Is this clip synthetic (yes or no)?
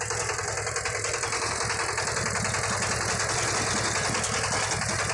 no